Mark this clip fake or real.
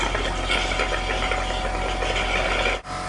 real